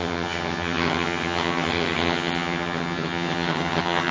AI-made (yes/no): yes